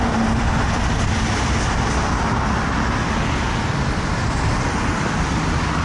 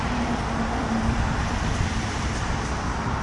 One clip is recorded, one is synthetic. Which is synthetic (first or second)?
second